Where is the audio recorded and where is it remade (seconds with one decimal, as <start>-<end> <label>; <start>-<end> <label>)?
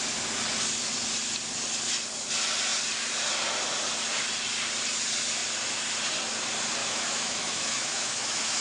0.0-6.8 recorded; 6.8-8.6 remade